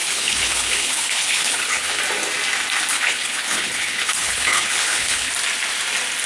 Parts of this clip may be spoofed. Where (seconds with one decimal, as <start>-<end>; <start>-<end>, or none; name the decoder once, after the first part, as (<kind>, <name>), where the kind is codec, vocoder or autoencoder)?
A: 0.0-2.0 (codec, HILCodec); 2.9-5.3